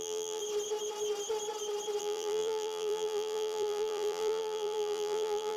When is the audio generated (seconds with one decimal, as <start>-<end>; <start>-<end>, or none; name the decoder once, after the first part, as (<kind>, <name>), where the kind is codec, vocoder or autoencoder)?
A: 0.0-0.4 (vocoder, BigVGAN v2); 2.0-5.6

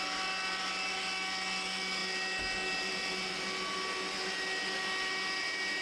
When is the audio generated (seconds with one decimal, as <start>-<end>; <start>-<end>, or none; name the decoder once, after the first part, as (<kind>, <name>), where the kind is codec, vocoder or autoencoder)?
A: none

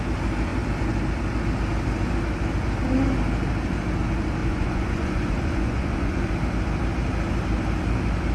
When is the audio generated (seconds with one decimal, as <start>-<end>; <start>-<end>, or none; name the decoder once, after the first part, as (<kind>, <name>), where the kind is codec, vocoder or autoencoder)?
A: 4.4-6.3 (vocoder, Vocos)

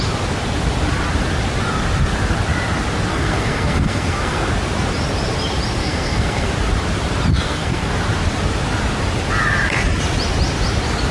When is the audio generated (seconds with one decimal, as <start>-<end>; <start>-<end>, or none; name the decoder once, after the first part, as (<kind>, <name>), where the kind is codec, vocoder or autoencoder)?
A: 3.1-4.5 (codec, SNAC); 5.8-6.5; 7.3-7.9

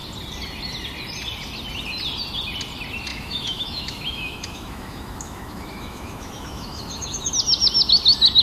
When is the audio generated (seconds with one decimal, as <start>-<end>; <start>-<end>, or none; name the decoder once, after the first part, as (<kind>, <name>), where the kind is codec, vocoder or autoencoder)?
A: 3.1-7.3 (autoencoder, DAC-VAE)

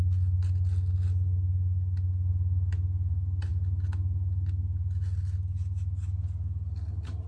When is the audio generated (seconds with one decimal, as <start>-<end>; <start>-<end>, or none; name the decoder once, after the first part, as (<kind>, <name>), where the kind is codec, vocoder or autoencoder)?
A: none

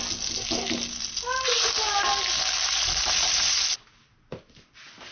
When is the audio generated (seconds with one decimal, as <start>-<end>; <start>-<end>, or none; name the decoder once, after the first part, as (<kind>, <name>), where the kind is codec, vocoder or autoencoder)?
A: none